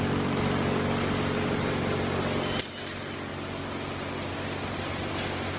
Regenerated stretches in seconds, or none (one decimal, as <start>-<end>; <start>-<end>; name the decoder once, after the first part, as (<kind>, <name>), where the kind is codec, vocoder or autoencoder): none